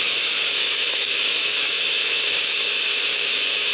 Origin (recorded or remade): remade